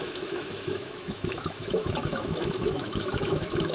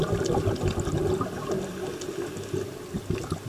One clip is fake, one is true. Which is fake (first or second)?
first